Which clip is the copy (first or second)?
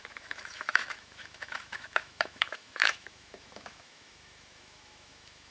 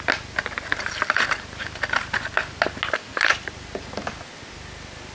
first